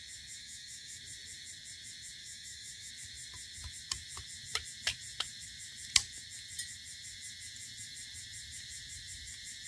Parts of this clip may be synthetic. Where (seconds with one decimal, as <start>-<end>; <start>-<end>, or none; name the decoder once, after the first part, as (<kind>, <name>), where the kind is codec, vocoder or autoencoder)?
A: 0.4-1.0 (autoencoder, DAC-VAE); 2.2-2.9